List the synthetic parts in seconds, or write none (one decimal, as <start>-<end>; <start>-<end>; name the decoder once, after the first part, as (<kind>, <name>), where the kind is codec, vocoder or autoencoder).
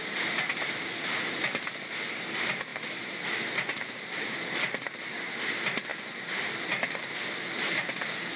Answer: none